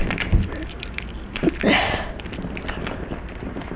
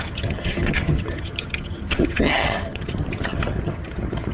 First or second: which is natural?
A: first